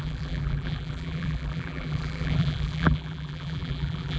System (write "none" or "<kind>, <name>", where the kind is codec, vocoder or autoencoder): vocoder, BigVGAN v2